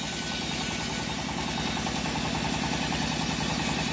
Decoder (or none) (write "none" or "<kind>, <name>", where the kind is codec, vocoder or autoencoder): none